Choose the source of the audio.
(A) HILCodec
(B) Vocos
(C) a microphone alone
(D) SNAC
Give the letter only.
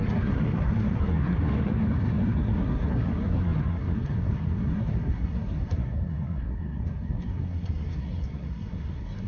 D